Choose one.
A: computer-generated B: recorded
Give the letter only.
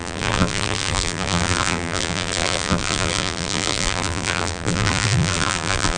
A